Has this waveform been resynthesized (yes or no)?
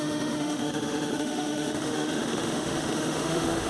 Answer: yes